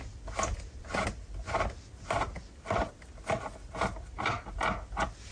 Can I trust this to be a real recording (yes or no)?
yes